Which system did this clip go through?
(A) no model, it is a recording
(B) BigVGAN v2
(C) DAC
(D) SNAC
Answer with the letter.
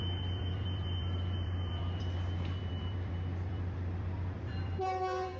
B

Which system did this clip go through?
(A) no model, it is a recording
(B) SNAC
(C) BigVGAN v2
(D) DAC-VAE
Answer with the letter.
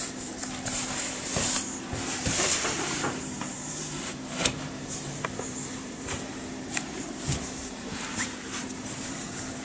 C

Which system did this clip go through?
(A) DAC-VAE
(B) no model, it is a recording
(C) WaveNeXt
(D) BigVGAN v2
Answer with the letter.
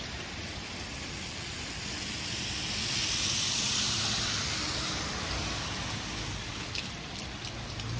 D